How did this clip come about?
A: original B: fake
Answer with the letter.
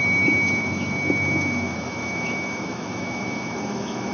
B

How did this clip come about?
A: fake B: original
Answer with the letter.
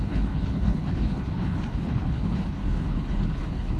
A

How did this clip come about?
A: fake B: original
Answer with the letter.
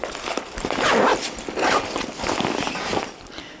B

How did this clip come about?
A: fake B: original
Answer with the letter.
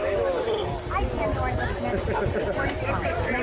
B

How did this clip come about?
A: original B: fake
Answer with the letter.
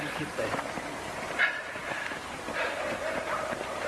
B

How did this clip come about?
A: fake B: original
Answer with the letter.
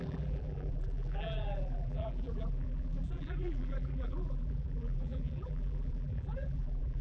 A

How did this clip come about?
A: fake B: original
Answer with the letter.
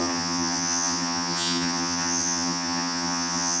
A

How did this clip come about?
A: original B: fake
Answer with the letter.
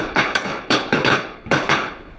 B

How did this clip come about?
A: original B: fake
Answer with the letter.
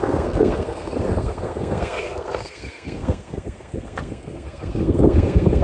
B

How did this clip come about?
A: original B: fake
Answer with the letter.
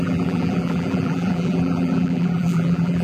B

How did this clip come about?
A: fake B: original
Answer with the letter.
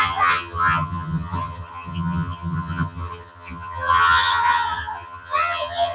A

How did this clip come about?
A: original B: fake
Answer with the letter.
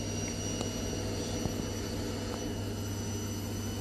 A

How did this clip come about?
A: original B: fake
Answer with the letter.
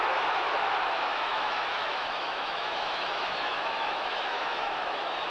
B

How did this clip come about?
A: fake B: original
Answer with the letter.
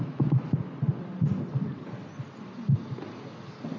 B